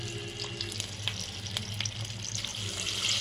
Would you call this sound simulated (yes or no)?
no